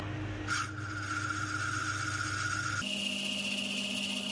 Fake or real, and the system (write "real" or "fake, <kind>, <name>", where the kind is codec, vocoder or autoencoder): real